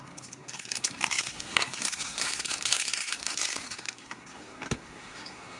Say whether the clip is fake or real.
fake